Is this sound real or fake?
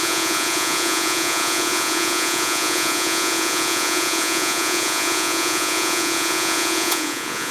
fake